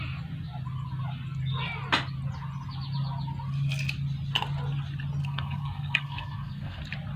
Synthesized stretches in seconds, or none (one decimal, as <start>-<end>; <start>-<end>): 5.2-6.8